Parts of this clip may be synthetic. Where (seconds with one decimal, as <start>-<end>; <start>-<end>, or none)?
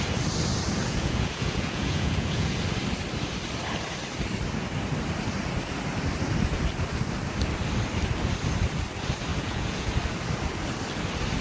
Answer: 0.8-2.6; 9.3-9.9